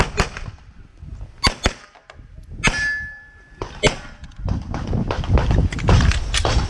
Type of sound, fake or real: real